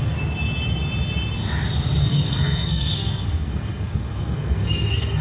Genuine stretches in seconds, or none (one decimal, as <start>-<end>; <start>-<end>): 0.0-2.0